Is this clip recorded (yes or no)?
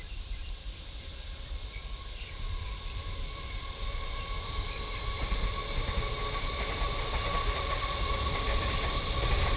no